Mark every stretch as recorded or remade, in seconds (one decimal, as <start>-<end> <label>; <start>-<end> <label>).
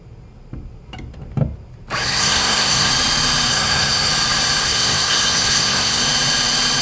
0.0-2.0 recorded; 2.0-2.9 remade; 2.9-3.5 recorded; 3.5-4.1 remade; 4.1-4.6 recorded; 4.6-6.0 remade; 6.0-6.8 recorded